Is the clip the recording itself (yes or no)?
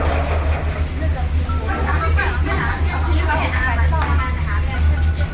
yes